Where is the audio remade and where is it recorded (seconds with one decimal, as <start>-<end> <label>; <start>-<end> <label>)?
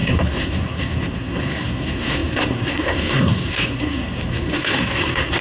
0.0-5.4 remade